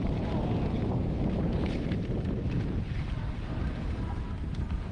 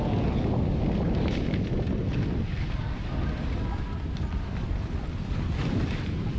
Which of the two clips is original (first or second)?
second